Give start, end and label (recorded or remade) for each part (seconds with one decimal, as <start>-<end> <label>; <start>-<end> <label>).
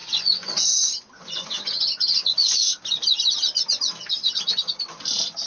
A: 0.0-2.7 remade; 2.7-5.5 recorded